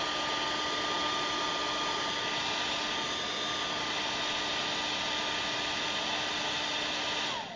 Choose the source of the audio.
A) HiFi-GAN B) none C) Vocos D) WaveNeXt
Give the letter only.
B